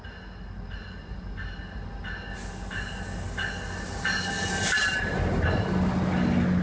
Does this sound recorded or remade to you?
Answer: recorded